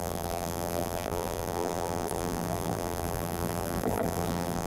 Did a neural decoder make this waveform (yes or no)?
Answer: yes